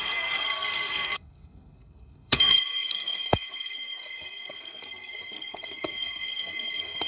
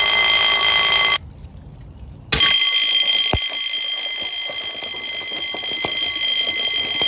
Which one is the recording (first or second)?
second